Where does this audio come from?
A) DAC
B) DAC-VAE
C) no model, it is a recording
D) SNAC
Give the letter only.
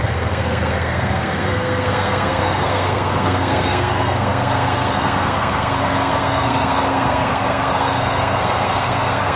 D